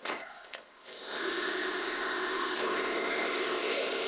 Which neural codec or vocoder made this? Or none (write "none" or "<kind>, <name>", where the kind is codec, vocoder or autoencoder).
codec, ZipCodec